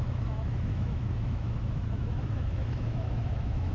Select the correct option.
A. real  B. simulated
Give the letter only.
B